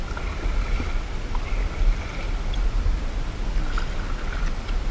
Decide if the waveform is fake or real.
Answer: real